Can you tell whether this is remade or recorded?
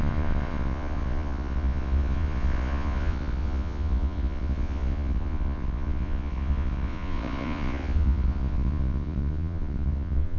remade